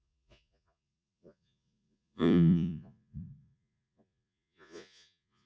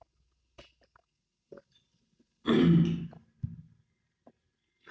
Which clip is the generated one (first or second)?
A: first